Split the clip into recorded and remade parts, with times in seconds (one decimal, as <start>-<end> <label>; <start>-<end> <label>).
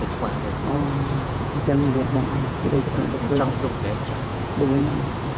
0.0-0.6 recorded; 0.6-3.8 remade; 3.8-4.3 recorded; 4.3-5.0 remade; 5.0-5.4 recorded